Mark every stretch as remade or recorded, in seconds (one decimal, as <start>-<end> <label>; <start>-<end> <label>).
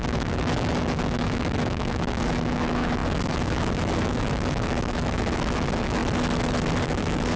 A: 0.0-6.0 remade; 6.0-6.8 recorded; 6.8-7.4 remade